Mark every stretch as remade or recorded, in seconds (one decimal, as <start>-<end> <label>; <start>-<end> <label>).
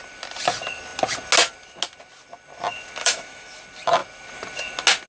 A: 0.0-3.0 recorded; 3.0-3.6 remade; 3.6-5.1 recorded